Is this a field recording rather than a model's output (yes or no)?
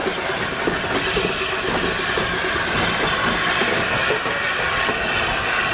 yes